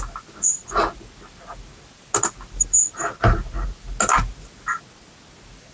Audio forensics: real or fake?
real